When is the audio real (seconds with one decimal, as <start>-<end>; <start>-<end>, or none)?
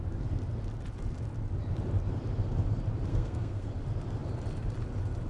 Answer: 0.0-3.1; 3.7-5.3